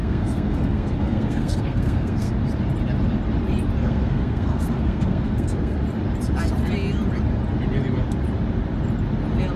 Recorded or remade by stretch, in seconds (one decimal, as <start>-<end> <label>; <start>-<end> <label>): 0.0-2.3 remade; 2.3-3.8 recorded; 3.8-5.8 remade; 5.8-9.6 recorded